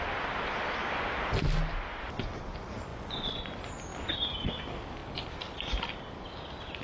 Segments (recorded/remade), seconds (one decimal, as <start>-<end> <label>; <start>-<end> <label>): 0.0-2.9 recorded; 2.9-3.5 remade; 3.5-6.8 recorded